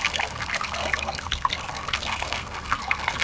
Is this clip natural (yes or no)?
no